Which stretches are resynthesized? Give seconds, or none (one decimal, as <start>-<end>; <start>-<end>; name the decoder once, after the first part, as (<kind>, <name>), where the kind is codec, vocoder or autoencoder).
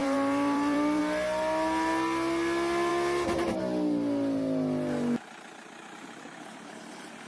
0.0-1.0 (vocoder, BigVGAN v2)